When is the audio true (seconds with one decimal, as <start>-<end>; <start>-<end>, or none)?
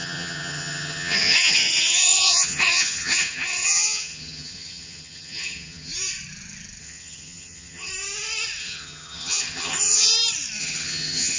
5.9-6.8; 7.9-8.6; 10.1-10.6